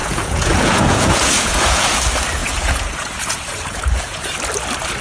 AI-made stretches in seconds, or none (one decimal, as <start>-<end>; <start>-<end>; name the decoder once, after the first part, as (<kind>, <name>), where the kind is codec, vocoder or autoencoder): 0.0-2.0 (vocoder, Vocos); 2.4-4.3